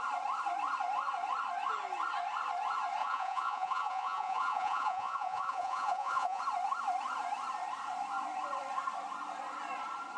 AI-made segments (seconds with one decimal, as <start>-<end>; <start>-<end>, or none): 3.0-6.4